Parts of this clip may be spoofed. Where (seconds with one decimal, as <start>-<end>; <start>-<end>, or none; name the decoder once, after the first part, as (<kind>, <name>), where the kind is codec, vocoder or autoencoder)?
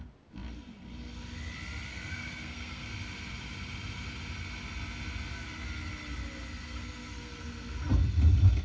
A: 1.9-2.9 (codec, SNAC); 6.6-7.4